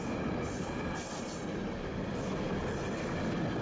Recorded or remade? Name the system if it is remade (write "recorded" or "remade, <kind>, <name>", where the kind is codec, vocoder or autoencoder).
recorded